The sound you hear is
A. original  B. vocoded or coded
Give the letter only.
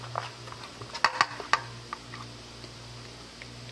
A